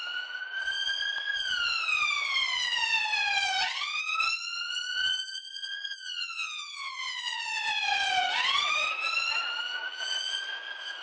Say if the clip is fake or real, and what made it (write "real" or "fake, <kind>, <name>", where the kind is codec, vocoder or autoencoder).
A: fake, vocoder, Vocos